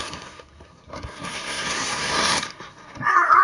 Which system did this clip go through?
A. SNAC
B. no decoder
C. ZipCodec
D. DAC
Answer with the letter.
A